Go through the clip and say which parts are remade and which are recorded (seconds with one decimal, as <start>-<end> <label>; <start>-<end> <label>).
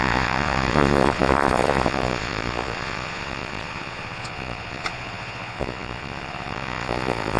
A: 0.0-7.4 remade